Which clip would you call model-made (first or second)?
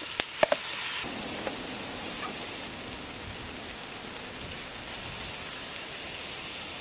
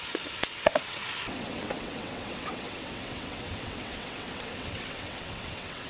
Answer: second